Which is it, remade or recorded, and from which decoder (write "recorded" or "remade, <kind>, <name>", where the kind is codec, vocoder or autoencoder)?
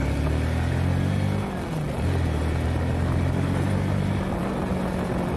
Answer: recorded